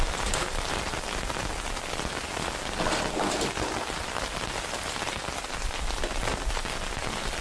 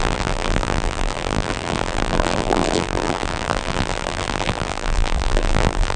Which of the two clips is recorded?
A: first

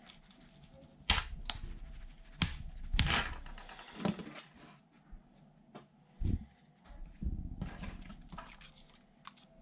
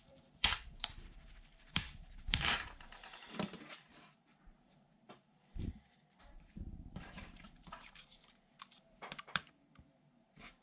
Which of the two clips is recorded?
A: first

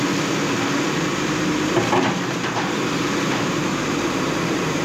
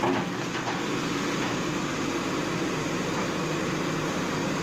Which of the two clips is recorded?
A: second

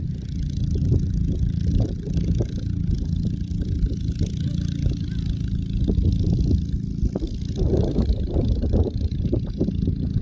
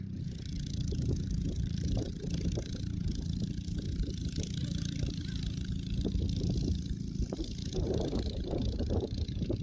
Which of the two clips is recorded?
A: first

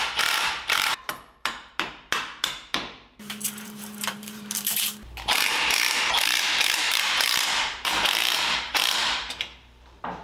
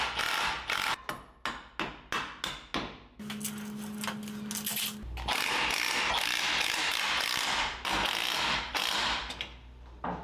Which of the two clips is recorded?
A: second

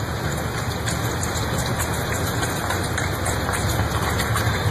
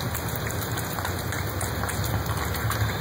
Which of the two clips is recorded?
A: second